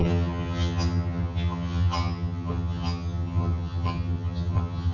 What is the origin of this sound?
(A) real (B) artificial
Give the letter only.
B